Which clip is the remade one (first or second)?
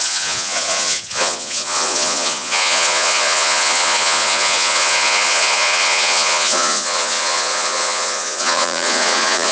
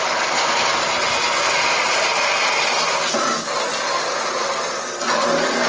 first